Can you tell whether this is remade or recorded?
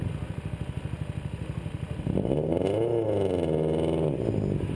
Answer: recorded